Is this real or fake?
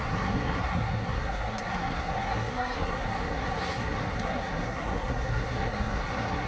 fake